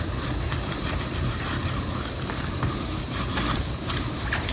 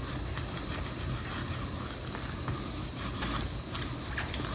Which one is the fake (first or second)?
first